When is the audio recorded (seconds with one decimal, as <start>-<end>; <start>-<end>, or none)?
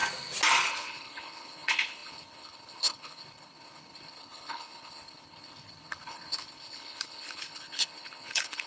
0.0-0.7